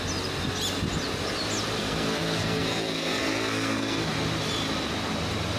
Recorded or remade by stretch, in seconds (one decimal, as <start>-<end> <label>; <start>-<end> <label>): 0.0-1.8 recorded; 1.8-4.1 remade; 4.1-5.6 recorded